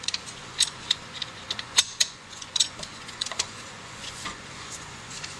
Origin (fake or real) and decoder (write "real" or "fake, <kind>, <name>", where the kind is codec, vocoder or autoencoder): fake, vocoder, Vocos